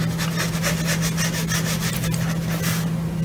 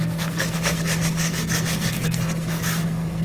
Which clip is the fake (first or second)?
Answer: second